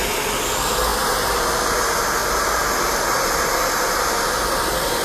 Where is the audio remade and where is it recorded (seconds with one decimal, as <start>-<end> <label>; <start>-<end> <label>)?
0.0-5.0 recorded